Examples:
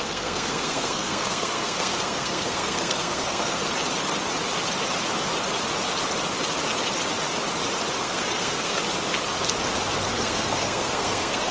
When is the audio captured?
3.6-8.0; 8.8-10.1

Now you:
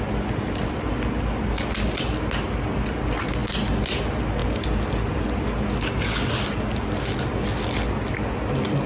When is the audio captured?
0.0-8.9

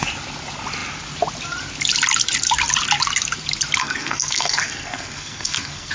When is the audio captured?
0.0-3.8

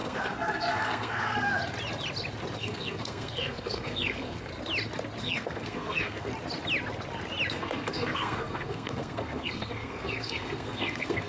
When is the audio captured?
1.6-2.6; 4.5-5.2; 6.3-7.5

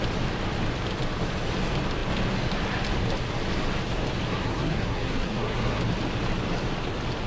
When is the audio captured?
0.0-4.3; 5.8-7.3